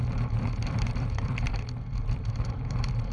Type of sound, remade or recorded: remade